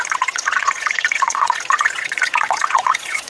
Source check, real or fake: fake